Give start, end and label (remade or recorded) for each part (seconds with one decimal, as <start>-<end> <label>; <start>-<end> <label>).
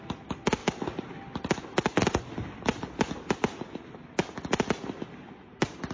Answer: 0.0-5.9 recorded